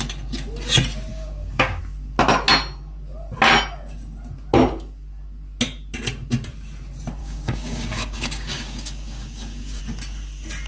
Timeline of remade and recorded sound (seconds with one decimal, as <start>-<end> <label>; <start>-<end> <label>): 0.0-1.1 recorded; 1.1-1.8 remade; 1.8-7.2 recorded; 7.2-9.8 remade; 9.8-10.7 recorded